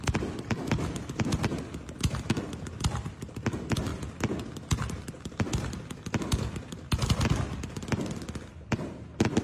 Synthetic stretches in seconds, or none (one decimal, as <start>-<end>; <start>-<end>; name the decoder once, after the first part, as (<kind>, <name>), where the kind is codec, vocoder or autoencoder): none